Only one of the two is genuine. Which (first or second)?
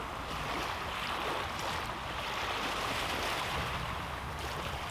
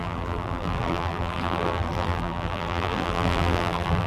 first